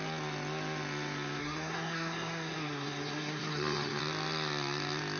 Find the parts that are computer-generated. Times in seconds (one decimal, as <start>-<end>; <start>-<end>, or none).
1.4-4.0